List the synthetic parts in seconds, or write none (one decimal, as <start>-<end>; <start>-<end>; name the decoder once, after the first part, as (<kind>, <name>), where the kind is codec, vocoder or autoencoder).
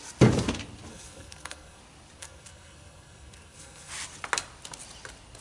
0.9-1.8 (codec, SNAC); 2.2-3.9